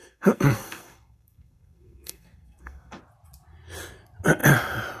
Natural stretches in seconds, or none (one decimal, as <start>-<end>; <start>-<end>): 3.0-5.0